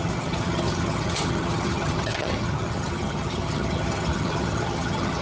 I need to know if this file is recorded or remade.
remade